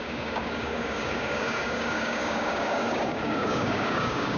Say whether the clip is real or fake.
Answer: fake